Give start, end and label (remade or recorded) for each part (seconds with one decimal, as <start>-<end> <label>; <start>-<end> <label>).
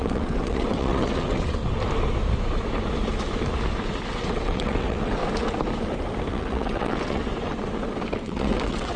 0.0-1.6 remade; 1.6-4.1 recorded; 4.1-5.2 remade; 5.2-6.3 recorded; 6.3-7.2 remade; 7.2-8.2 recorded; 8.2-9.0 remade